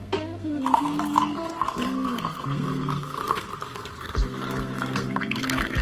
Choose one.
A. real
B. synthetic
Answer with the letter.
B